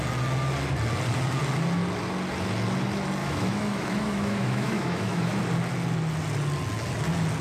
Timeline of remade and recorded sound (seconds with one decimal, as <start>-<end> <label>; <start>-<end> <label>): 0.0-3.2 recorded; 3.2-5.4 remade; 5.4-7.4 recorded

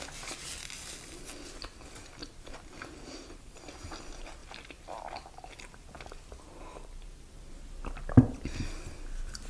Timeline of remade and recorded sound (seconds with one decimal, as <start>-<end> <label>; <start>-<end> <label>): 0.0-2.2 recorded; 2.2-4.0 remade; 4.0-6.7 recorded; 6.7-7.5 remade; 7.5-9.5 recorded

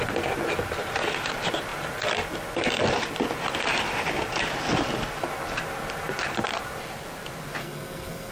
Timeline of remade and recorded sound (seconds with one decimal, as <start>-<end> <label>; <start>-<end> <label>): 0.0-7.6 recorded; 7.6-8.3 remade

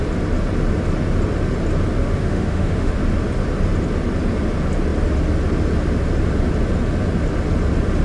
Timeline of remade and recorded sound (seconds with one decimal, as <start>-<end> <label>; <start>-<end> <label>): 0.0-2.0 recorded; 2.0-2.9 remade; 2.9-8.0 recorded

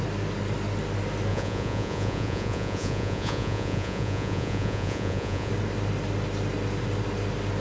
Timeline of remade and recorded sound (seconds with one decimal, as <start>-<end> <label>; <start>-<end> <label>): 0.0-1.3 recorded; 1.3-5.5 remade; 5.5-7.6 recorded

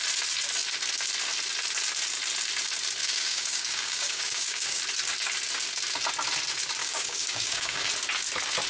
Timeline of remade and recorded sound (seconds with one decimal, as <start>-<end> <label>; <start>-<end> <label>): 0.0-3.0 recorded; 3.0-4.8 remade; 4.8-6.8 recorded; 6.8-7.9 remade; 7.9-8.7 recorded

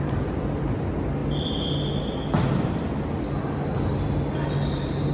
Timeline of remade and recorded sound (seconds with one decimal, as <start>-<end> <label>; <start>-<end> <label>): 0.0-5.1 recorded

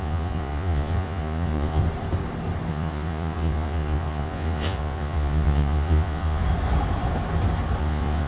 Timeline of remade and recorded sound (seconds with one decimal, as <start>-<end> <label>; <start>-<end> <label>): 0.0-1.8 remade; 1.8-2.7 recorded; 2.7-6.4 remade; 6.4-7.8 recorded; 7.8-8.3 remade